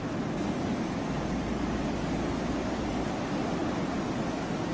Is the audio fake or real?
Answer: real